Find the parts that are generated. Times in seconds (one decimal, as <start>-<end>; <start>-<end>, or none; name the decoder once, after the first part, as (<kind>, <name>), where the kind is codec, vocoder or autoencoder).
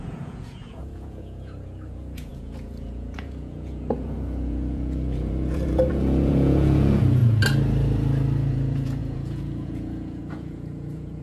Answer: 0.0-7.2 (vocoder, Vocos); 8.5-11.2